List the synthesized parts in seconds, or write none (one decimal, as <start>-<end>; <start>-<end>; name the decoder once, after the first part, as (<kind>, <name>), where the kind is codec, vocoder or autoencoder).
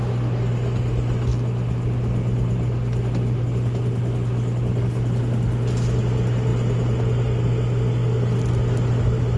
none